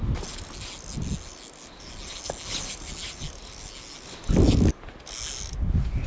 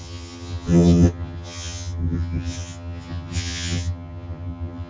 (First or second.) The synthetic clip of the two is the second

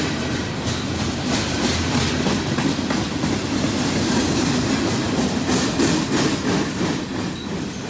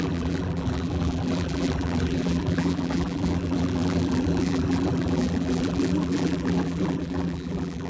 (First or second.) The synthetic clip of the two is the second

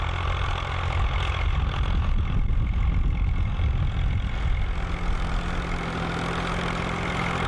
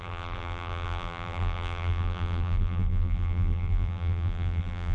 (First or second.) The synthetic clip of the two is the second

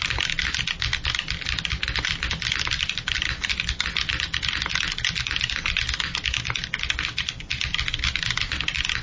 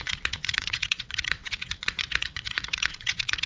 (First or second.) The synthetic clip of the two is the second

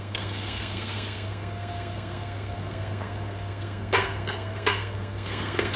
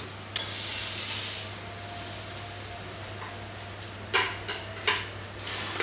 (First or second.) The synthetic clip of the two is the first